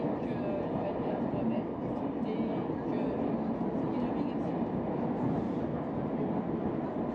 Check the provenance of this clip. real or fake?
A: real